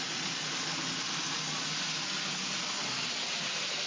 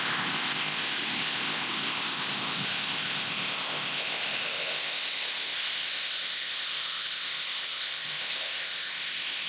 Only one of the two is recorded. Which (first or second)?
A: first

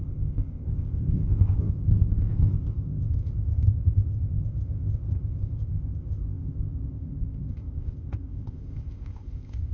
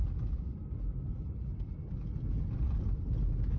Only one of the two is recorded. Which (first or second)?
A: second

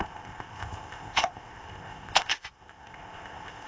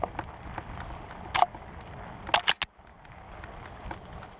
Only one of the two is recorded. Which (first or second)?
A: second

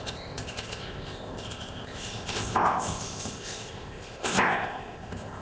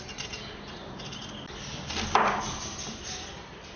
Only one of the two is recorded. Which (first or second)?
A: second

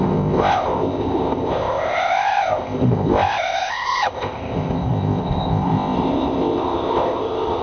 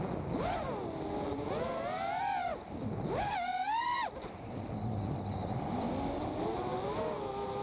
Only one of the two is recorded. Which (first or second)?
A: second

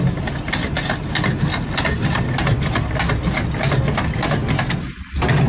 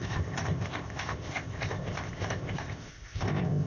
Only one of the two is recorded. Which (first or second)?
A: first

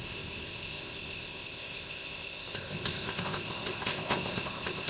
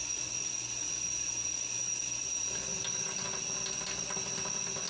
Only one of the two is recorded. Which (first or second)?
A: second